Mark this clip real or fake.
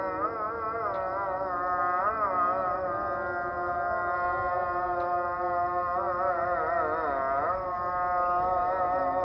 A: real